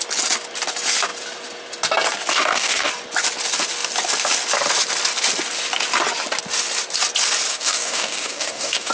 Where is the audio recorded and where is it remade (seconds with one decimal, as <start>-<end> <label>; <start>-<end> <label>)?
0.0-2.3 recorded; 2.3-2.9 remade; 2.9-7.5 recorded; 7.5-8.9 remade